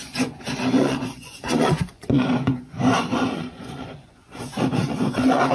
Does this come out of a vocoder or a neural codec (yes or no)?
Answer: yes